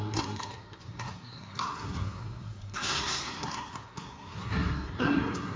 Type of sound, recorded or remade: remade